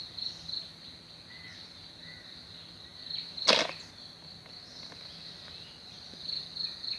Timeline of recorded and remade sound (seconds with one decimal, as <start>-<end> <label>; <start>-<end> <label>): 0.0-7.0 recorded

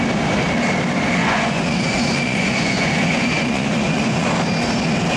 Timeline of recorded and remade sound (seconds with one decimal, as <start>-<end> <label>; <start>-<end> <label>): 0.0-1.2 recorded; 1.2-4.3 remade; 4.3-5.2 recorded

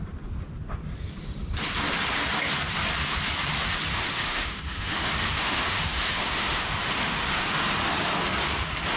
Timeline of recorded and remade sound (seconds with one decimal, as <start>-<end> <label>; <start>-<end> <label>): 0.0-3.9 recorded; 3.9-7.6 remade; 7.6-9.0 recorded

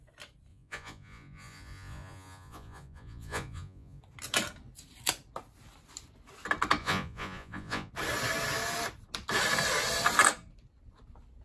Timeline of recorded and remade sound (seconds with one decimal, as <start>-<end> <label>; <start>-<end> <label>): 0.0-0.5 recorded; 0.5-4.0 remade; 4.0-6.8 recorded; 6.8-7.9 remade; 7.9-11.4 recorded

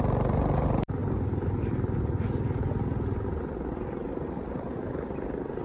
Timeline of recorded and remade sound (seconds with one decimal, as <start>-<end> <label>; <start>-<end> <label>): 0.0-5.6 recorded